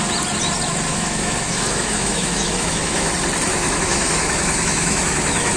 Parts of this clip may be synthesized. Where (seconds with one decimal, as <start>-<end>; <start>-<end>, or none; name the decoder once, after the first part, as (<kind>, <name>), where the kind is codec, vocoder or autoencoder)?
0.9-3.1 (autoencoder, DAC-VAE); 3.5-5.6